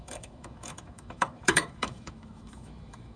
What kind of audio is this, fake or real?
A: fake